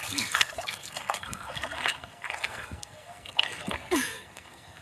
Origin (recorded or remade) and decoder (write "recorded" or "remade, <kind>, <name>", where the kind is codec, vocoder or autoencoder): remade, codec, SNAC